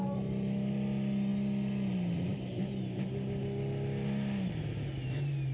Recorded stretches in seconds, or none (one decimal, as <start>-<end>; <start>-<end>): 0.0-5.5

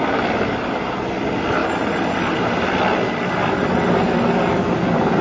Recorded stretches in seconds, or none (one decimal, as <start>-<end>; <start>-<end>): 0.0-5.2

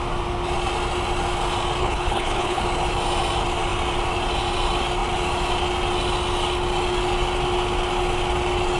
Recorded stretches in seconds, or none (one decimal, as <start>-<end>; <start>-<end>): 0.0-1.8; 2.6-8.8

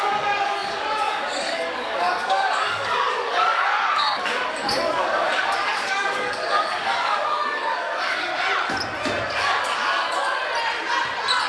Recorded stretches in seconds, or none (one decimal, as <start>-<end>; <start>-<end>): 8.3-9.3; 10.4-11.5

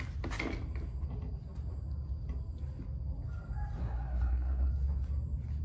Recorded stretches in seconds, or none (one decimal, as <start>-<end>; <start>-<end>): 0.0-3.8; 4.7-5.6